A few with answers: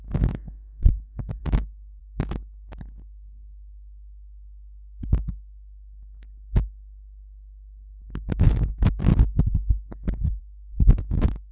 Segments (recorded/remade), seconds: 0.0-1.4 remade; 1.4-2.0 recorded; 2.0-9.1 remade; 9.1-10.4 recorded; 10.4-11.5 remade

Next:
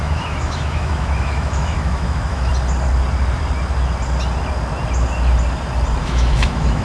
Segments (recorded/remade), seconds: 0.0-2.5 remade; 2.5-6.0 recorded; 6.0-6.8 remade

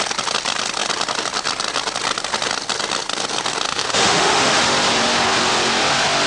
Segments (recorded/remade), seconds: 0.0-3.7 recorded; 3.7-4.6 remade; 4.6-6.3 recorded

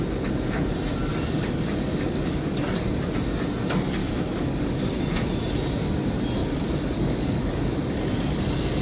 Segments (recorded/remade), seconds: 0.0-1.1 recorded; 1.1-3.0 remade; 3.0-4.0 recorded; 4.0-5.0 remade; 5.0-6.4 recorded; 6.4-8.8 remade

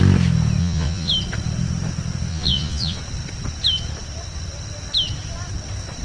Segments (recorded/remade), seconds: 0.0-0.6 recorded; 0.6-1.1 remade; 1.1-2.3 recorded; 2.3-3.0 remade; 3.0-6.0 recorded

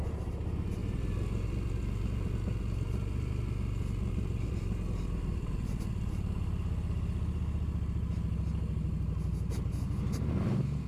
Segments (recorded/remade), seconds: 0.0-10.9 recorded

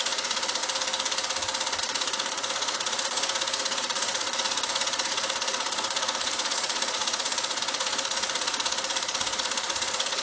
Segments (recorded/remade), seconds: 0.0-0.6 remade; 0.6-1.8 recorded; 1.8-10.2 remade

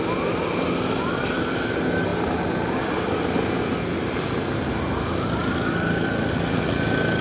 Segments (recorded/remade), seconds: 0.0-7.2 recorded